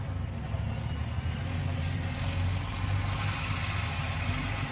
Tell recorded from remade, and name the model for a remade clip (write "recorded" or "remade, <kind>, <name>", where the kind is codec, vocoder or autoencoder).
recorded